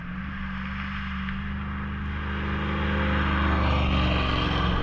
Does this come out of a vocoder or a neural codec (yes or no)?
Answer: no